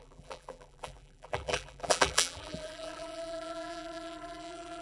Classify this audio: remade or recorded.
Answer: remade